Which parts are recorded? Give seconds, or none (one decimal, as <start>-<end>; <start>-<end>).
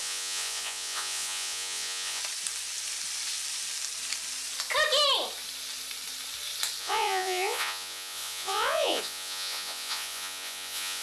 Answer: 2.2-6.8